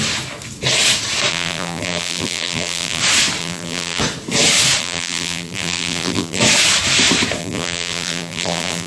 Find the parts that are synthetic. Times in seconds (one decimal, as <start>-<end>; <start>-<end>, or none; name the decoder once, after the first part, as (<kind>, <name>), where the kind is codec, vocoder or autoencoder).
1.3-3.0 (vocoder, BigVGAN v2); 3.4-4.0; 4.8-6.4; 7.4-8.9